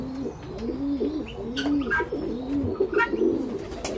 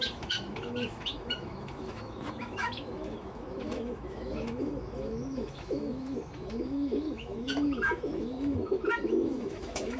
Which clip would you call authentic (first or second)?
first